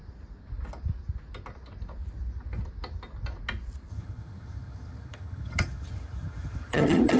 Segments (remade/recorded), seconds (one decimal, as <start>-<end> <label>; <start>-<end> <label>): 0.0-3.9 recorded; 3.9-7.2 remade